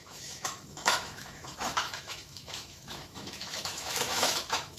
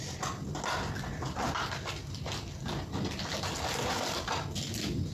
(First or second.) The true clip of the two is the second